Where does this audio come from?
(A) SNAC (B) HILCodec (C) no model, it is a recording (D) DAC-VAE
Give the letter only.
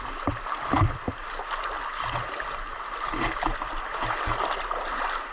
C